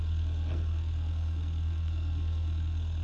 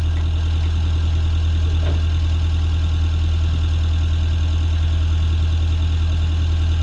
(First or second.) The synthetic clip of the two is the first